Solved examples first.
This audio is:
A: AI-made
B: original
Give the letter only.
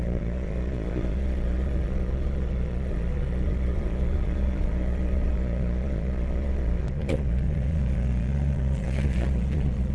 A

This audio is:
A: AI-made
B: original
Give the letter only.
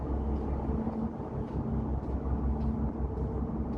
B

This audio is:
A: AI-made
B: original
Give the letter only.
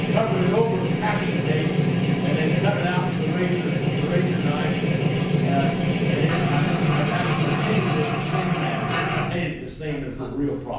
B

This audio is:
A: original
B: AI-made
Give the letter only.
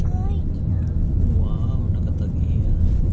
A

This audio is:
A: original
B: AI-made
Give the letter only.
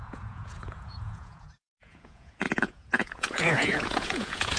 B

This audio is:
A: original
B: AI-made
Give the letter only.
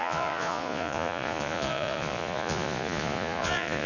B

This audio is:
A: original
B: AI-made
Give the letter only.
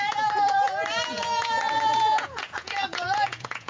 B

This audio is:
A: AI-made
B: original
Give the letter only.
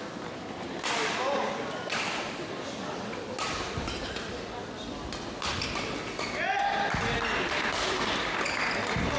B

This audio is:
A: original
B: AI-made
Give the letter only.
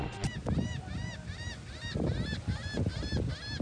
A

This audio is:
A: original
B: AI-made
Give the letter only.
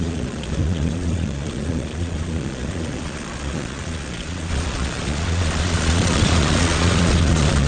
B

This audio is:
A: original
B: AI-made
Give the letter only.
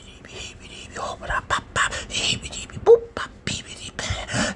A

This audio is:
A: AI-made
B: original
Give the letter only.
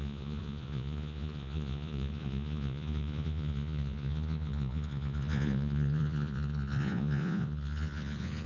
A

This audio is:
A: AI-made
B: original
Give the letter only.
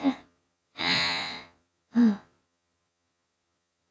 A